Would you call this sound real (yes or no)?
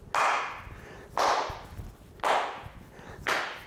yes